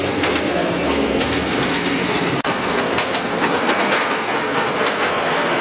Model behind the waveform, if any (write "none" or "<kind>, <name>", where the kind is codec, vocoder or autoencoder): codec, SNAC